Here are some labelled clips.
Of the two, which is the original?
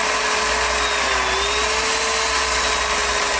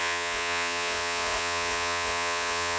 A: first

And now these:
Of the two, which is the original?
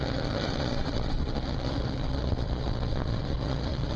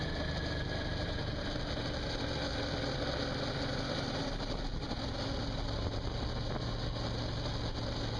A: second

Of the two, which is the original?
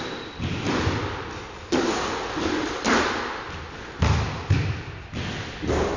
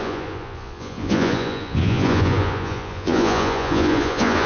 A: first